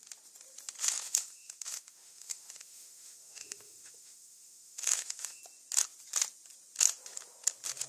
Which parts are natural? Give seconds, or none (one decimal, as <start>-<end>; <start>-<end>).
0.0-0.8; 5.4-7.9